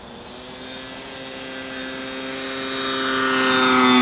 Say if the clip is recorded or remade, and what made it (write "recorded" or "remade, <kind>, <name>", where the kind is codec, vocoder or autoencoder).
recorded